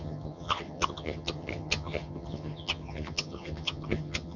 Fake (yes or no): yes